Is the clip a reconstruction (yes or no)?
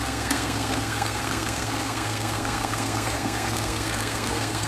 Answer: yes